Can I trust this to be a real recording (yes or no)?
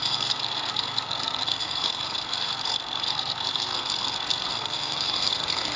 no